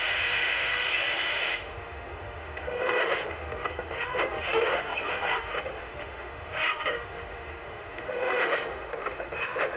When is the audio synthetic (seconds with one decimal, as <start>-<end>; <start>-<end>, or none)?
0.0-9.8